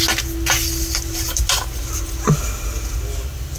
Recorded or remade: recorded